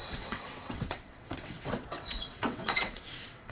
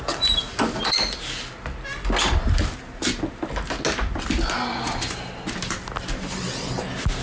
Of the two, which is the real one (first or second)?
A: second